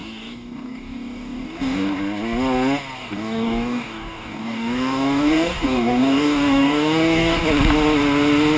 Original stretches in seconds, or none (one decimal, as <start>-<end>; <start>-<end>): 2.0-3.0; 7.4-8.6